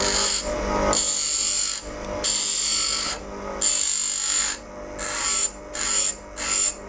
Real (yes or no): yes